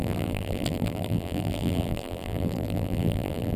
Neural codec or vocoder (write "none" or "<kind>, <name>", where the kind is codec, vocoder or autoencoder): vocoder, BigVGAN v2